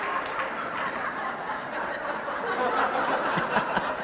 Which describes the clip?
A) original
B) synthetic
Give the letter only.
A